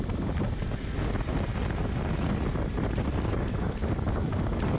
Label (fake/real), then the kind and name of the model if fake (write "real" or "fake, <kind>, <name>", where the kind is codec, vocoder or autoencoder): real